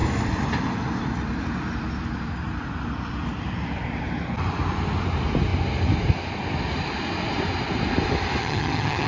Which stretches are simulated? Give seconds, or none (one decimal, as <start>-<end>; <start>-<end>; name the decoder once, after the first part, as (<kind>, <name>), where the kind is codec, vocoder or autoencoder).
8.4-9.1 (vocoder, HiFi-GAN)

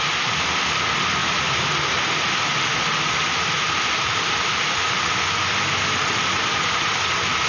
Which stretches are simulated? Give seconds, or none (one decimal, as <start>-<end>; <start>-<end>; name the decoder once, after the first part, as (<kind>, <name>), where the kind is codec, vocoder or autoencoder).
none

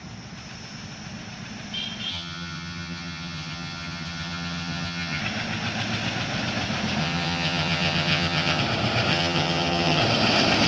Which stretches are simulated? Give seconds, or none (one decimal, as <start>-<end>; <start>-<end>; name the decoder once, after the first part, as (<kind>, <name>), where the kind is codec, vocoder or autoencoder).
2.1-5.2 (vocoder, HiFi-GAN); 7.0-8.6; 9.1-10.0